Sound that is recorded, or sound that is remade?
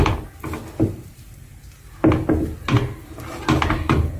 recorded